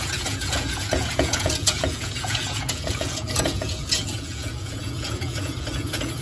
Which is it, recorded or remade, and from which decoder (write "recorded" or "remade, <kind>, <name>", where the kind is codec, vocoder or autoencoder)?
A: remade, vocoder, Vocos